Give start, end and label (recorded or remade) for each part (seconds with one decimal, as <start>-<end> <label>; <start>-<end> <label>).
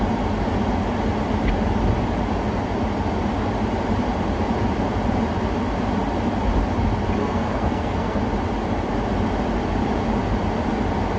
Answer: 0.0-7.2 recorded; 7.2-8.2 remade; 8.2-11.2 recorded